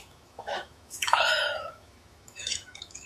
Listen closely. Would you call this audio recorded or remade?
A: remade